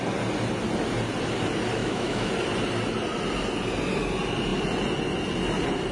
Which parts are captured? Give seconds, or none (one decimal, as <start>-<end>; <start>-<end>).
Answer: 0.0-1.8; 2.3-5.9